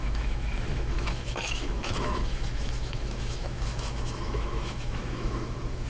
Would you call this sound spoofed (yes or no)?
yes